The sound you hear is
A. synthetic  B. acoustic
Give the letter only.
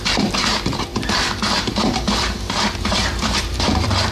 A